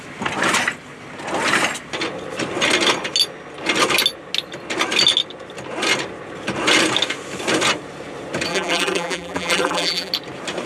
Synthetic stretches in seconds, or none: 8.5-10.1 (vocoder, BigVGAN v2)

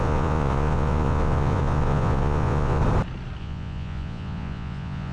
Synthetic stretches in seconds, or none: 0.0-2.8 (vocoder, Vocos); 3.4-5.1

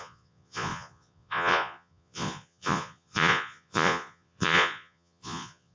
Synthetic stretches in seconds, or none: 0.0-5.7 (vocoder, Vocos)

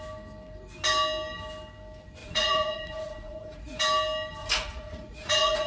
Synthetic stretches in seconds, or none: 2.2-3.8 (vocoder, Vocos); 4.4-5.7

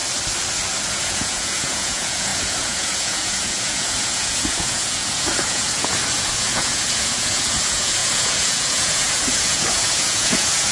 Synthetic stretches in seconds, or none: 0.9-10.7 (vocoder, Vocos)

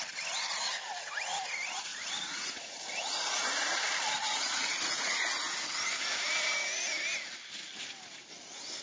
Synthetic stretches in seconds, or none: 1.9-2.8 (vocoder, Vocos); 4.2-5.4